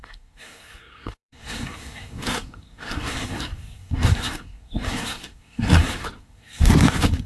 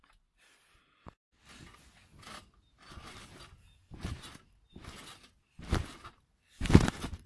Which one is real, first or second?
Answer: second